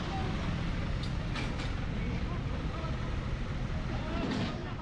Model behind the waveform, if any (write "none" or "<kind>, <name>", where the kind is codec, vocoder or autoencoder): none